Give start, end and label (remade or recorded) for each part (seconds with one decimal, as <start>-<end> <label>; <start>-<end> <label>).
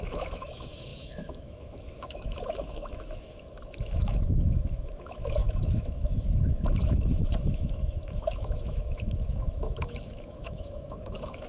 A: 0.0-11.5 remade